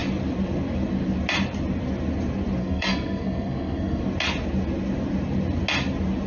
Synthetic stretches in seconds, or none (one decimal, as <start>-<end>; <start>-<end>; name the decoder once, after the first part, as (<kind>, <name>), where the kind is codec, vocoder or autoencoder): 2.6-4.0 (codec, SNAC)